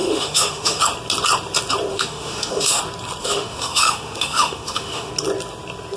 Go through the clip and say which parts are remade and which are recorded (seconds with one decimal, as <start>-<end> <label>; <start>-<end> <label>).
0.0-0.8 remade; 0.8-1.9 recorded; 1.9-2.8 remade; 2.8-3.2 recorded; 3.2-5.1 remade; 5.1-6.0 recorded